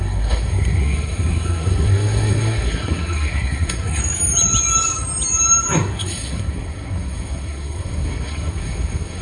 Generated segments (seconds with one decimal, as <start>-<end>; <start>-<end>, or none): 0.0-4.0; 5.7-9.2